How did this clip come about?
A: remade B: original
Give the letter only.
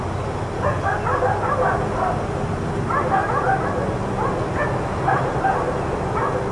B